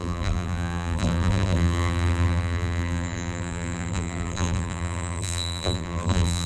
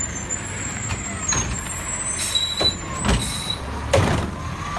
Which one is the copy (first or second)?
first